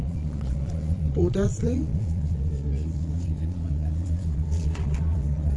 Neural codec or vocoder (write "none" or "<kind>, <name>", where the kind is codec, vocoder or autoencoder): vocoder, Vocos